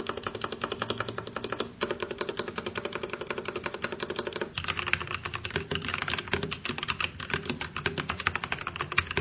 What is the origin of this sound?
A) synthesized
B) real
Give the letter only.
B